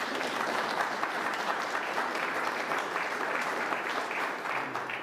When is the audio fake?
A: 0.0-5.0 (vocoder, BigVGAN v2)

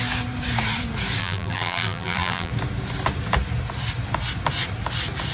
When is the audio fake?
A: 1.2-2.5 (vocoder, BigVGAN v2)

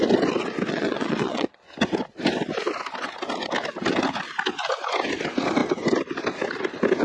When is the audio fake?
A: 0.7-1.6 (vocoder, Vocos)

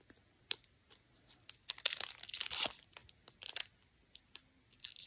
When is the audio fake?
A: none

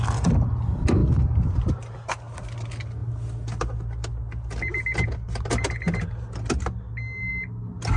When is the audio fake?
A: none

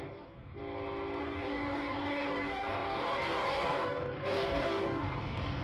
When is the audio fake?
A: 0.0-0.6 (codec, DAC); 1.2-5.6

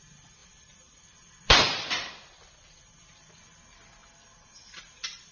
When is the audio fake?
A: 0.4-3.6 (vocoder, BigVGAN v2); 4.0-5.3